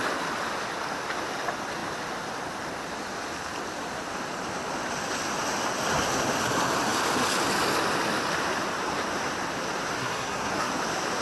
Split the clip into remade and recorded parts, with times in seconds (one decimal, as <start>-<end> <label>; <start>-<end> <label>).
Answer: 0.0-10.0 recorded; 10.0-10.7 remade; 10.7-11.2 recorded

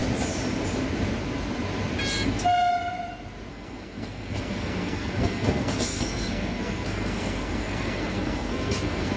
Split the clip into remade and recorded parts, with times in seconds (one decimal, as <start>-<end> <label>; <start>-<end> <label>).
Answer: 0.0-3.5 recorded; 3.5-9.2 remade

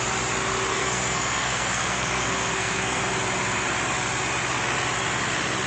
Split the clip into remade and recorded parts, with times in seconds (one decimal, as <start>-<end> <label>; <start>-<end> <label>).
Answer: 0.0-0.7 recorded; 0.7-3.0 remade; 3.0-5.7 recorded

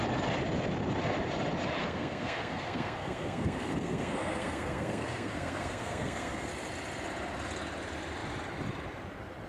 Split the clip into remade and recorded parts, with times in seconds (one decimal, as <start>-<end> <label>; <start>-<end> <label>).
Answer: 0.0-1.8 recorded; 1.8-6.5 remade; 6.5-9.5 recorded

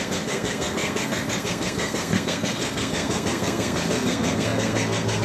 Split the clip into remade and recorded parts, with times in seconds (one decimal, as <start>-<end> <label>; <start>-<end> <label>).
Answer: 0.0-5.2 remade